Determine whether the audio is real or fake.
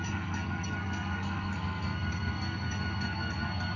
fake